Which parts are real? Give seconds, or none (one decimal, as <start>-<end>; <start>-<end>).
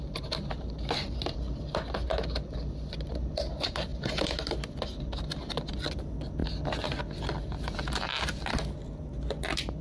0.0-9.8